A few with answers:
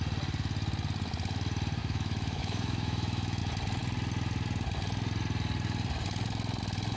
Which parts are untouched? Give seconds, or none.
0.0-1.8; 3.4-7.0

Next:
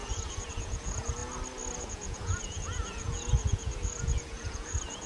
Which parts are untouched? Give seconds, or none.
1.2-1.8

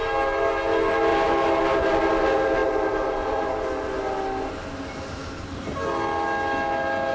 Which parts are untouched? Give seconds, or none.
0.0-1.1; 1.9-7.1

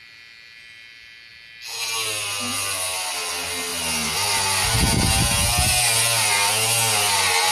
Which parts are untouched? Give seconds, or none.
0.0-7.5

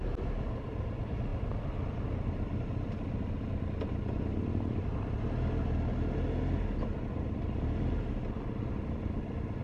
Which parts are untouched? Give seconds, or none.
0.0-9.6

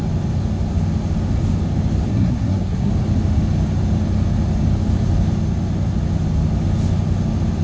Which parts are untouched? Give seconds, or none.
0.0-2.1; 2.9-7.6

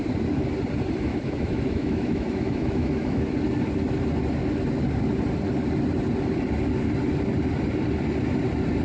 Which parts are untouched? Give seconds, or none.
0.0-1.1; 3.2-8.8